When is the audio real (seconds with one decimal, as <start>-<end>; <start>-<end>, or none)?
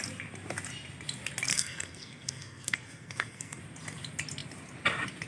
0.0-1.5; 3.6-5.3